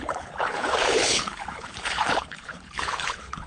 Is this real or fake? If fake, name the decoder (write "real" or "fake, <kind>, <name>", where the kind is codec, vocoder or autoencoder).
fake, codec, HILCodec